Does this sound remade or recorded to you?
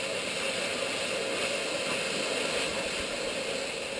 recorded